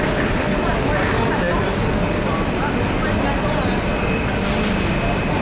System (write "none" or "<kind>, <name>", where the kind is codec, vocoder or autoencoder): none